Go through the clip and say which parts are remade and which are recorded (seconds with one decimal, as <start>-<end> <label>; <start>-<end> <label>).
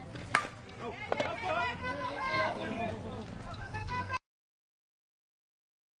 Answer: 0.0-1.8 recorded; 1.8-2.8 remade; 2.8-3.6 recorded; 3.6-4.7 remade; 4.7-6.0 recorded